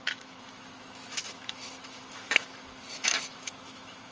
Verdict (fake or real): fake